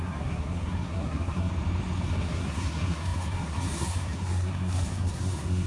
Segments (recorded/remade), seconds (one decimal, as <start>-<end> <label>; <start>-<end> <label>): 0.0-1.5 remade; 1.5-2.1 recorded; 2.1-5.7 remade